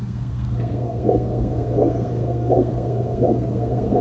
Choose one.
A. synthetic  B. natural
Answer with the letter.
A